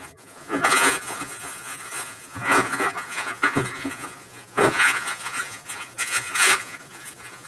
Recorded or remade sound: remade